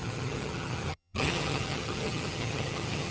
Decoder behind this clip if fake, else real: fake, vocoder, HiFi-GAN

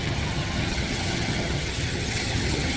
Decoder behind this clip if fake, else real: fake, vocoder, HiFi-GAN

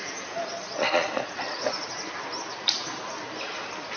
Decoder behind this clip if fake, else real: real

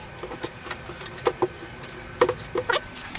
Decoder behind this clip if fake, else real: real